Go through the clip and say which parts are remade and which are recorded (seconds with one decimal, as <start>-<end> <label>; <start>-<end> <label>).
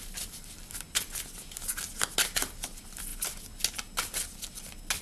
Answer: 0.0-5.0 recorded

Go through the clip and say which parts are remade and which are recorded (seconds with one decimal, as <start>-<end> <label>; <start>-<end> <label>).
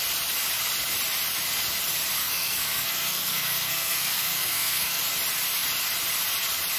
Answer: 0.0-2.2 recorded; 2.2-5.0 remade; 5.0-6.8 recorded